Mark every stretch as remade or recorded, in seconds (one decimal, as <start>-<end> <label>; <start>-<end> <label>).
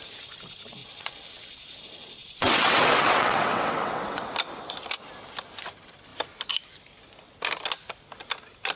0.0-0.8 recorded; 0.8-1.8 remade; 1.8-2.2 recorded; 2.2-4.3 remade; 4.3-8.8 recorded